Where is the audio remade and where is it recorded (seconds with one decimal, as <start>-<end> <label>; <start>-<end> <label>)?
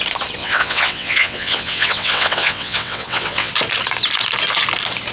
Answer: 0.0-0.4 recorded; 0.4-3.5 remade; 3.5-5.1 recorded